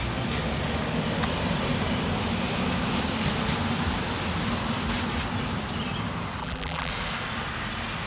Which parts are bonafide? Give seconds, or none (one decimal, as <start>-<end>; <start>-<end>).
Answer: 0.0-6.4; 6.9-8.1